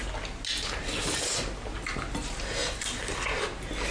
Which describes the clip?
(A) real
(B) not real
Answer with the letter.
A